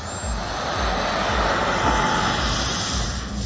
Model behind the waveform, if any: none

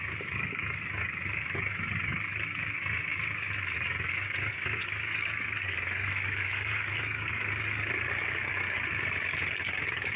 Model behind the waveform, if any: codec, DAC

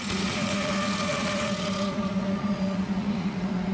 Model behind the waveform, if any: vocoder, Vocos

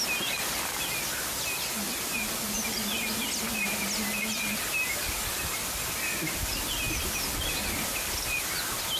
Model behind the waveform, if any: none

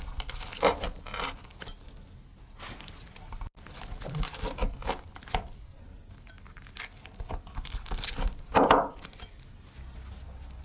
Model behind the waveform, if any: none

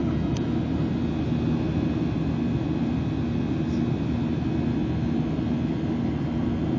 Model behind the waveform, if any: none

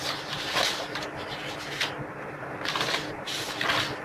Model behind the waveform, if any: none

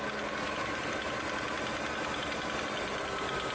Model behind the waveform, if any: none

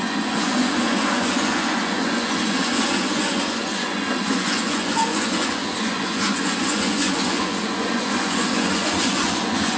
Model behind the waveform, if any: vocoder, Vocos